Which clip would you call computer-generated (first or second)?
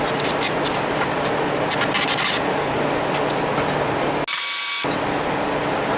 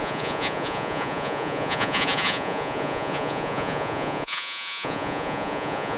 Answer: second